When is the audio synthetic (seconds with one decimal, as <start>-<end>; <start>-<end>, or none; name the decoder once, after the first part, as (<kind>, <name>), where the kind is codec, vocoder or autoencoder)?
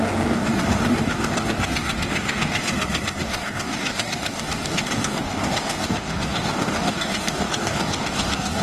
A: 0.0-2.7 (codec, DAC); 3.2-8.6